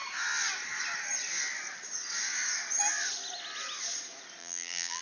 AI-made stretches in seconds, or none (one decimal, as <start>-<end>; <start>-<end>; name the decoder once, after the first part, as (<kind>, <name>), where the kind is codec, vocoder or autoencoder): 4.4-5.0 (vocoder, BigVGAN v2)